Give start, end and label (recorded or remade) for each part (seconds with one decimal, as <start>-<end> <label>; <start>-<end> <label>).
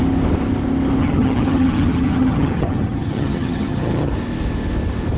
0.0-1.0 recorded; 1.0-4.1 remade; 4.1-5.2 recorded